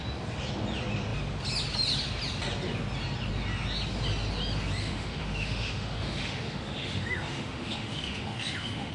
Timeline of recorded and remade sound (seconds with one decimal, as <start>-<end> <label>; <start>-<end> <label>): 0.0-4.8 recorded; 4.8-8.9 remade